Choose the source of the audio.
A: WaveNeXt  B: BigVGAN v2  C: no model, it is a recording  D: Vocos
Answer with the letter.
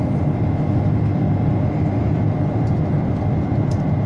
C